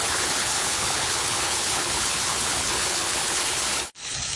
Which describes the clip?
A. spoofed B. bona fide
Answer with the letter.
A